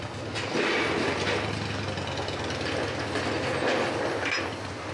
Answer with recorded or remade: recorded